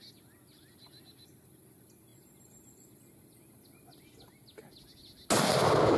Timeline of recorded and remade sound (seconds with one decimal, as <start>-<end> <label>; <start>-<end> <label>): 0.0-6.0 recorded